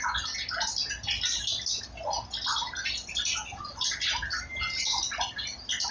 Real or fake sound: real